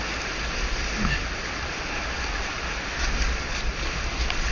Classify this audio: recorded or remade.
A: recorded